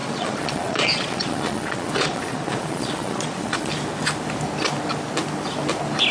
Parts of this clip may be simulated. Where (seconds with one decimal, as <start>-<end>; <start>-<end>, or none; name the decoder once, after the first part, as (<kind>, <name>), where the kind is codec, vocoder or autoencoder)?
0.0-3.7 (vocoder, Vocos)